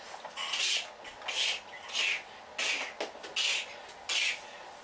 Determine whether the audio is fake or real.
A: real